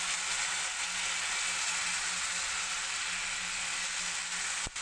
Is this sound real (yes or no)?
yes